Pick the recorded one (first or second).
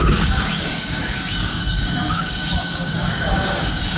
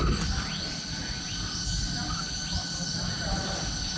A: second